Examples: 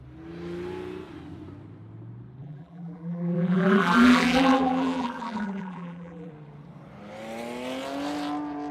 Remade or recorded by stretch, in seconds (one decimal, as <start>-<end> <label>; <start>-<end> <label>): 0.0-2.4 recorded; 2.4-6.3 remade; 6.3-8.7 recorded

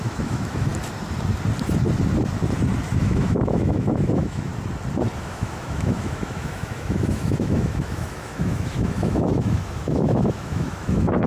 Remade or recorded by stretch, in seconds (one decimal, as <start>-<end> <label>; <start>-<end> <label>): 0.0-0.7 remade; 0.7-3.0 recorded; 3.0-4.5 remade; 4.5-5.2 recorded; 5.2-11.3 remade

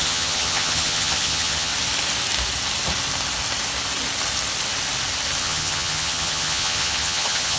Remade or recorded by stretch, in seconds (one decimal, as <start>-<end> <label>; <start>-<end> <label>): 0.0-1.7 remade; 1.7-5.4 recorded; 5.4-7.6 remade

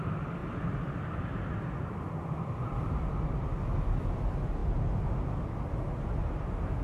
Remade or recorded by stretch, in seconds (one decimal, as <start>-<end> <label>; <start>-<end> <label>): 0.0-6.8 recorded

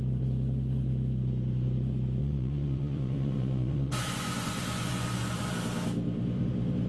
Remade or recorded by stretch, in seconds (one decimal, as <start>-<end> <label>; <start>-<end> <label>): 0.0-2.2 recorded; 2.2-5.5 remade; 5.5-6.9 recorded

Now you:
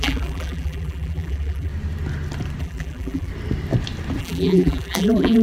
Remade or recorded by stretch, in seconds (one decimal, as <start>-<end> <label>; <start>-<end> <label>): 0.0-1.7 remade; 1.7-2.6 recorded; 2.6-3.3 remade; 3.3-4.2 recorded; 4.2-5.4 remade

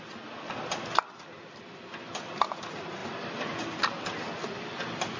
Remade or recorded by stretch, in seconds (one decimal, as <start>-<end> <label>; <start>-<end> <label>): 0.0-3.0 recorded; 3.0-3.6 remade; 3.6-5.2 recorded